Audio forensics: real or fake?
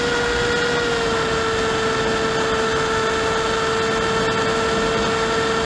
real